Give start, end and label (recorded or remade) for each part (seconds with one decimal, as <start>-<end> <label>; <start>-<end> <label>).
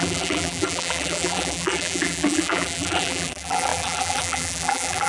0.0-5.1 remade